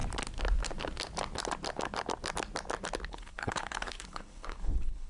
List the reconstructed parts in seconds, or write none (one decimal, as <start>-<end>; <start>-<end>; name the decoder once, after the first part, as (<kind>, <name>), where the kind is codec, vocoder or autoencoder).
3.1-5.1 (codec, HILCodec)